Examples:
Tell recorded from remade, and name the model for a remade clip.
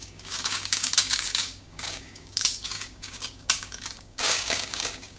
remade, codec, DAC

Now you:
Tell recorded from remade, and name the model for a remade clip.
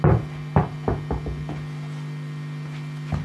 recorded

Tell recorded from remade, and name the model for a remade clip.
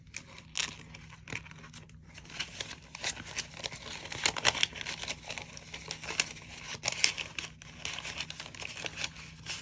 recorded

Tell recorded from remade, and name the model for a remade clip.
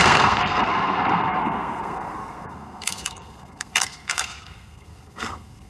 remade, codec, SNAC